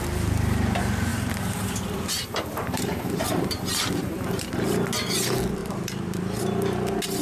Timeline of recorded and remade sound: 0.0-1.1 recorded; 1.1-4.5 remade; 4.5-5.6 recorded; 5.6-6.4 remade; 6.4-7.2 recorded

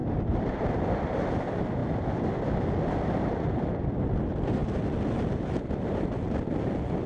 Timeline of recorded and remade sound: 0.0-1.8 remade; 1.8-2.9 recorded; 2.9-7.1 remade